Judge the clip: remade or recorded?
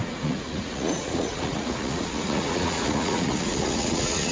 remade